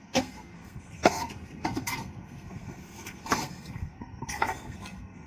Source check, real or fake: fake